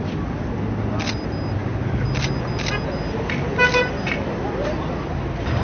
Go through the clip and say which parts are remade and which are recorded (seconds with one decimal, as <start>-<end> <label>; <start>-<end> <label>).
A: 0.0-5.6 recorded